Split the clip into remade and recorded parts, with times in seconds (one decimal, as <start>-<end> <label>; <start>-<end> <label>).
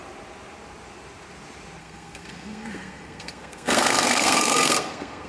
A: 0.0-1.8 recorded; 1.8-5.3 remade